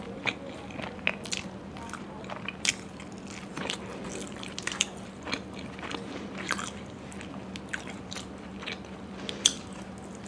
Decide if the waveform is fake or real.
real